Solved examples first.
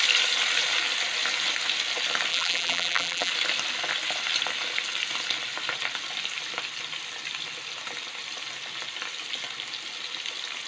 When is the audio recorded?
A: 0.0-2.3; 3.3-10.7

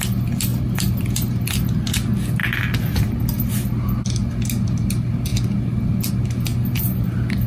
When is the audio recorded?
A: 0.0-0.5; 1.0-6.5

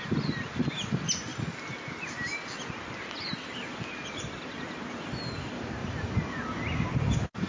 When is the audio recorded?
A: 0.0-5.8; 7.0-7.5

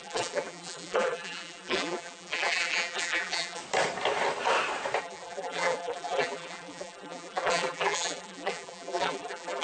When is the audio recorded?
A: 3.6-5.0

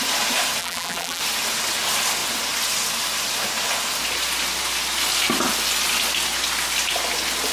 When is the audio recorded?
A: 0.0-0.6; 1.2-7.5

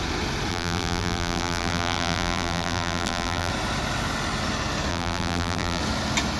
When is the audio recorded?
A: 0.0-0.5; 3.5-4.9; 5.8-6.4

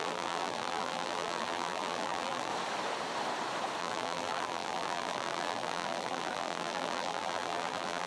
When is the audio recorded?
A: 2.5-3.8

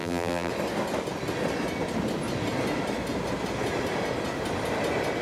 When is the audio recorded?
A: 0.5-5.2